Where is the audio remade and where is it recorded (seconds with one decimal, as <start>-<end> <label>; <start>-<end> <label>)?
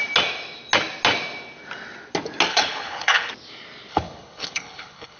0.0-2.5 recorded; 2.5-3.3 remade; 3.3-3.9 recorded; 3.9-5.2 remade